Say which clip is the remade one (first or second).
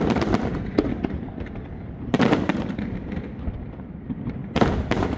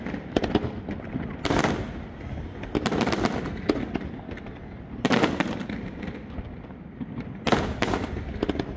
first